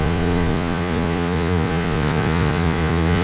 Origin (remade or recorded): remade